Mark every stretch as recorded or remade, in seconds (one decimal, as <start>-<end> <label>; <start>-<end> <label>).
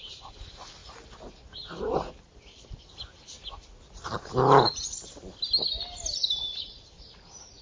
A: 0.0-0.8 recorded; 0.8-5.4 remade; 5.4-7.6 recorded